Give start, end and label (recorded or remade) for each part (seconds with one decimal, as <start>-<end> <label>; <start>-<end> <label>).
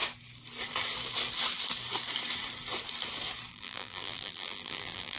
0.0-3.5 recorded; 3.5-5.2 remade